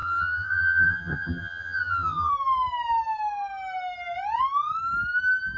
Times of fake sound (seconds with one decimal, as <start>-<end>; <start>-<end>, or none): 0.0-2.3